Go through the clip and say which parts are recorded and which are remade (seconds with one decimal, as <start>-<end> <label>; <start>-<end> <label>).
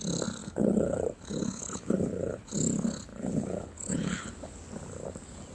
0.0-0.4 recorded; 0.4-2.5 remade; 2.5-3.1 recorded; 3.1-4.3 remade; 4.3-5.5 recorded